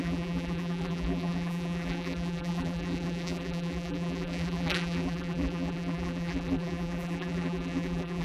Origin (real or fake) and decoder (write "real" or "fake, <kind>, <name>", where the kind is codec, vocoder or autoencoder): fake, vocoder, BigVGAN v2